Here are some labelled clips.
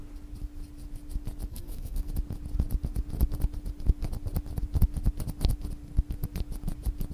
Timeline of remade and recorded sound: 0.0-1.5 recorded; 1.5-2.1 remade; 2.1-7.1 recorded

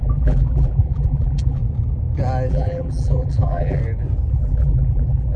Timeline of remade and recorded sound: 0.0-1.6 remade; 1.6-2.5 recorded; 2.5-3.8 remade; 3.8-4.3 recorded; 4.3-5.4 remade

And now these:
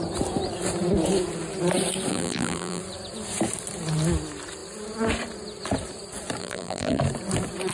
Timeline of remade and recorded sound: 0.0-2.1 recorded; 2.1-2.8 remade; 2.8-6.4 recorded; 6.4-7.0 remade; 7.0-7.7 recorded